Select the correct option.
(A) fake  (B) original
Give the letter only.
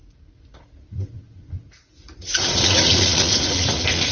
A